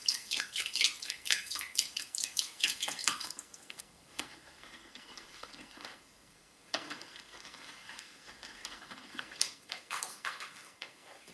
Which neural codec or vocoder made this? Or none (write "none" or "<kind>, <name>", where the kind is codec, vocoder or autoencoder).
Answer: codec, SNAC